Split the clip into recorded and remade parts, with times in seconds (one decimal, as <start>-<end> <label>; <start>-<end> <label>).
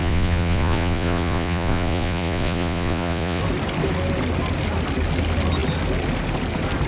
0.0-3.4 remade; 3.4-6.9 recorded